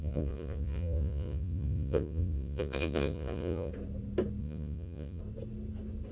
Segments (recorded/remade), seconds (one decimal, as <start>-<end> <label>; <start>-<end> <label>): 0.0-3.7 remade; 3.7-4.4 recorded; 4.4-5.2 remade; 5.2-6.1 recorded